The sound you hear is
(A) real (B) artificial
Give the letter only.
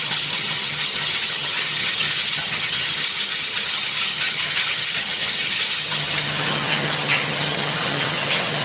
B